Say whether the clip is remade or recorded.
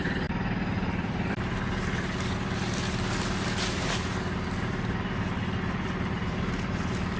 remade